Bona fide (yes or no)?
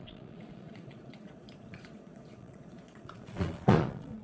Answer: no